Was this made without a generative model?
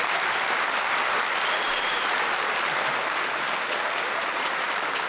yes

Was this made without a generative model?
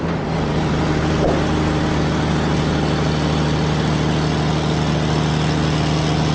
yes